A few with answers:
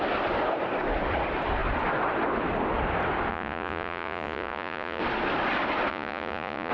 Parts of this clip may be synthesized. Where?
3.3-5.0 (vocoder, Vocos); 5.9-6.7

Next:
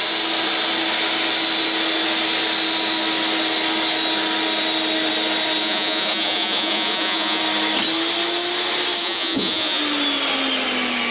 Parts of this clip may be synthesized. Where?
5.6-7.4 (vocoder, Vocos); 9.0-9.8

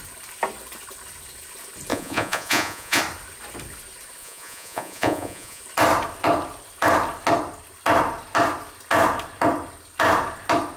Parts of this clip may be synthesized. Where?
1.9-3.0 (vocoder, Vocos); 4.2-5.6

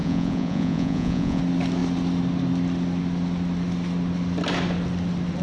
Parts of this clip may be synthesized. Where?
0.0-1.4 (vocoder, Vocos)